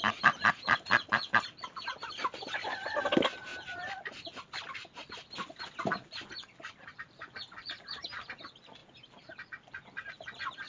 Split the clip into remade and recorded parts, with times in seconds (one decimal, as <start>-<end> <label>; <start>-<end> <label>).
0.0-10.7 recorded